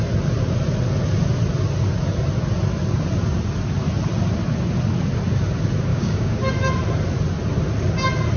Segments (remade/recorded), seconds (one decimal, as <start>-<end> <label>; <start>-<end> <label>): 0.0-5.9 recorded; 5.9-6.4 remade; 6.4-8.4 recorded